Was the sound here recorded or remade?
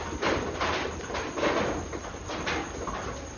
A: recorded